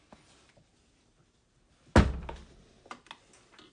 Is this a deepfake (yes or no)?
no